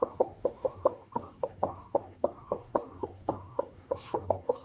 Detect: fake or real fake